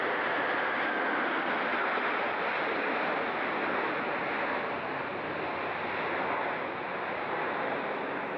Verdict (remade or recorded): recorded